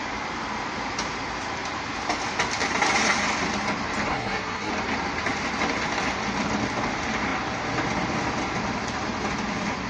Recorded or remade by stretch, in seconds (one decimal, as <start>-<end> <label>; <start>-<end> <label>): 0.0-4.1 recorded; 4.1-4.7 remade; 4.7-9.9 recorded